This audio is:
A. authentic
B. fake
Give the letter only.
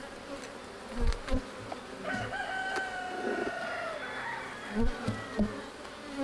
A